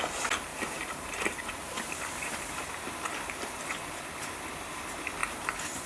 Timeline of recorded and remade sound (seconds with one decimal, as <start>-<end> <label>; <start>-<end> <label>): 0.0-0.5 recorded; 0.5-4.0 remade; 4.0-5.2 recorded; 5.2-5.9 remade